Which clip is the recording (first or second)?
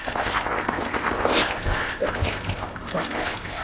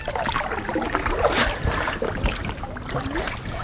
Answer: second